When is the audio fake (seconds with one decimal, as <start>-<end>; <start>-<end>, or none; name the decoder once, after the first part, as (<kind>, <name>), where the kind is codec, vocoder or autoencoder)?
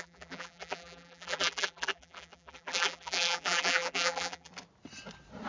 0.0-4.5 (vocoder, BigVGAN v2)